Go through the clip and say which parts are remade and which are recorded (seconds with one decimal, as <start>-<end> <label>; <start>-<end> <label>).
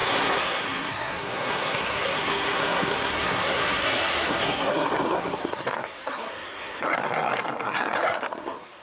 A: 0.0-8.8 remade